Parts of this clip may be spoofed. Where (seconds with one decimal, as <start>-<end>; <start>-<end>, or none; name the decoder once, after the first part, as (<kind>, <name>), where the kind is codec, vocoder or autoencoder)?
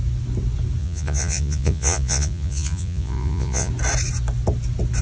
0.8-3.7 (vocoder, Vocos)